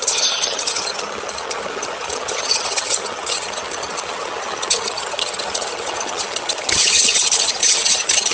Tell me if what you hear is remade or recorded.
remade